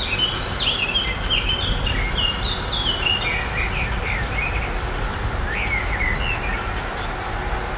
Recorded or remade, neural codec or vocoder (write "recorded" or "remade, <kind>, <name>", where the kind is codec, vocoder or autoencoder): recorded